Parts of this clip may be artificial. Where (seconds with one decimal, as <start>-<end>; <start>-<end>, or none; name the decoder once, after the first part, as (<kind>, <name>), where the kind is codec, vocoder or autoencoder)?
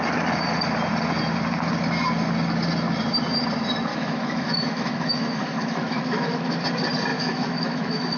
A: 3.9-6.6 (autoencoder, DAC-VAE); 7.1-8.2